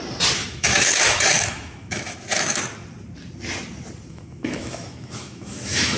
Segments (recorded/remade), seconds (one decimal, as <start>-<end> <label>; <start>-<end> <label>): 0.0-0.4 recorded; 0.4-2.6 remade; 2.6-4.1 recorded; 4.1-6.0 remade